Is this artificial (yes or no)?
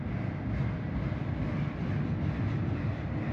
no